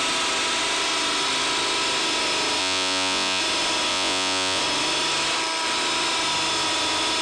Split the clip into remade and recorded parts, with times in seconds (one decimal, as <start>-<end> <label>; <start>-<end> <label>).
0.0-2.6 recorded; 2.6-3.4 remade; 3.4-3.9 recorded; 3.9-4.6 remade; 4.6-7.2 recorded